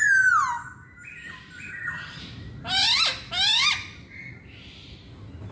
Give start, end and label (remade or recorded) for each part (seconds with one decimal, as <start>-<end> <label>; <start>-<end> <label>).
0.0-1.7 recorded; 1.7-2.2 remade; 2.2-5.5 recorded